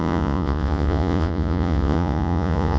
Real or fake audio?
fake